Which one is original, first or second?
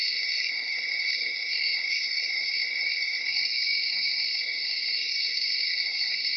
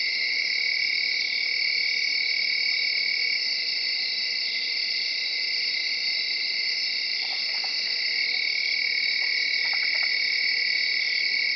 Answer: second